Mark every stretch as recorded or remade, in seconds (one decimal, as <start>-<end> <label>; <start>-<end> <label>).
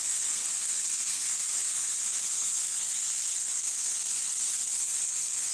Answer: 0.0-5.5 remade